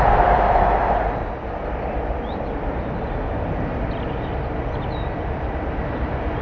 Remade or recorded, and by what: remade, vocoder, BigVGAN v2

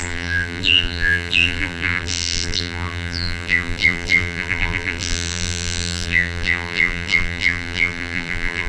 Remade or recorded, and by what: remade, vocoder, BigVGAN v2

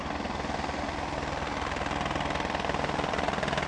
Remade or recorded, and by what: remade, vocoder, BigVGAN v2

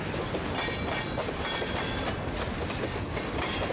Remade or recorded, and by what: recorded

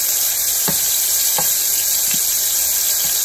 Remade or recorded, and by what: recorded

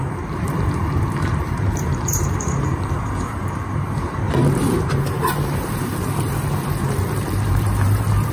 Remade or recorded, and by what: remade, vocoder, BigVGAN v2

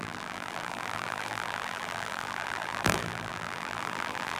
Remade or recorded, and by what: remade, vocoder, BigVGAN v2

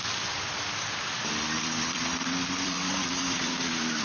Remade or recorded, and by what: remade, vocoder, BigVGAN v2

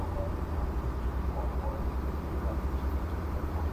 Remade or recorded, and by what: remade, vocoder, BigVGAN v2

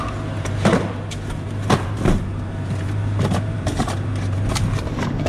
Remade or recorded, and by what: remade, vocoder, BigVGAN v2